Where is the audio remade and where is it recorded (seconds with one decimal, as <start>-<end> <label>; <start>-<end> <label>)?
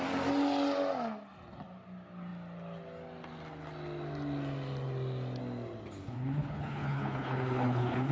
0.0-6.0 recorded; 6.0-8.1 remade